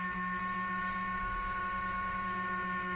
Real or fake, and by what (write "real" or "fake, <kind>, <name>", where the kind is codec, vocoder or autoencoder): fake, autoencoder, DAC-VAE